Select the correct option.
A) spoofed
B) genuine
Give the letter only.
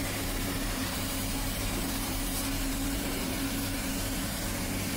A